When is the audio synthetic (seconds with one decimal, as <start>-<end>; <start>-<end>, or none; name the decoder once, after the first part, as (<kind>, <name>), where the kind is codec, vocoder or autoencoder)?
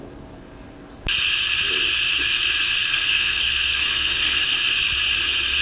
2.9-4.4 (codec, SNAC)